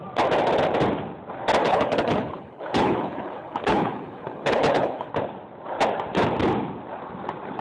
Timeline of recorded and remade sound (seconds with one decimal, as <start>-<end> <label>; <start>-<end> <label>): 0.0-1.6 recorded; 1.6-5.1 remade; 5.1-7.6 recorded